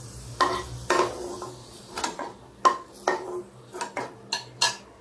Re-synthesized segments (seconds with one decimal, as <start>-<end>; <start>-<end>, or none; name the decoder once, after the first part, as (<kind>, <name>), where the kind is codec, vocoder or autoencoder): 1.6-2.4 (vocoder, Vocos)